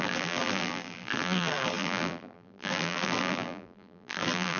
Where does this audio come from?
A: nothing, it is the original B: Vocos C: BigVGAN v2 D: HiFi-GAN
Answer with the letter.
C